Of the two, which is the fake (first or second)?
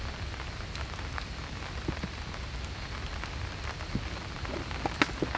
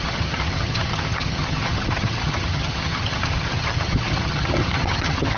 second